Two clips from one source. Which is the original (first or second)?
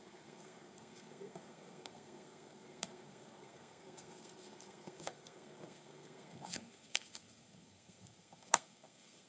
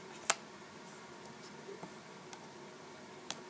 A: second